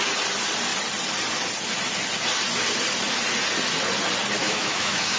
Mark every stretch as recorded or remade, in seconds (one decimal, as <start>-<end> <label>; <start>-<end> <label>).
0.0-4.4 recorded; 4.4-5.2 remade